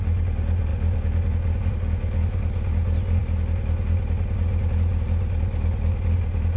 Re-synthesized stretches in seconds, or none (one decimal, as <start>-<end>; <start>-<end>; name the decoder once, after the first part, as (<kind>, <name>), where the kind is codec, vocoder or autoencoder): none